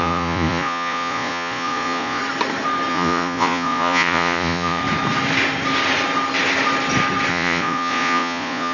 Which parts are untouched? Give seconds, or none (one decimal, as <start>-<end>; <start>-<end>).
2.2-2.9; 4.8-7.3